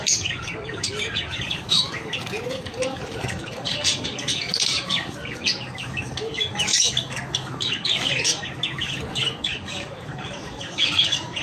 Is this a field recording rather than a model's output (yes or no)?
no